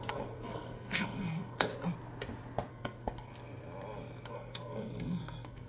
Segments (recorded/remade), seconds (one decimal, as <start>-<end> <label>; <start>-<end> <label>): 0.0-1.7 remade; 1.7-2.7 recorded; 2.7-3.3 remade; 3.3-4.3 recorded; 4.3-5.7 remade